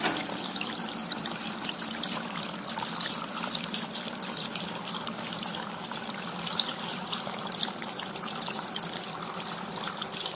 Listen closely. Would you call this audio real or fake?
fake